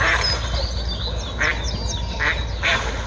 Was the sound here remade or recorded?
recorded